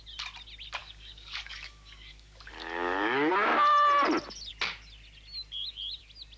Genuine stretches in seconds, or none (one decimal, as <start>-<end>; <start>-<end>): 0.0-0.8; 3.3-6.4